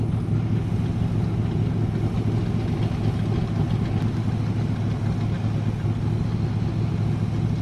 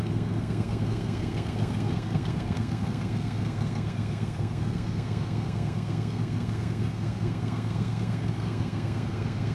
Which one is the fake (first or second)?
second